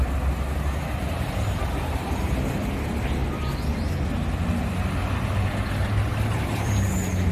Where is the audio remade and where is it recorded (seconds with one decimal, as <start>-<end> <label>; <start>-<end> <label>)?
0.0-6.1 recorded; 6.1-6.8 remade; 6.8-7.3 recorded